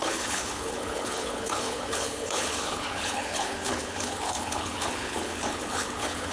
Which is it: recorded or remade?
remade